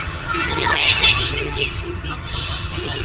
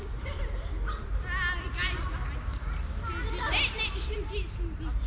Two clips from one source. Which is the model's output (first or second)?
first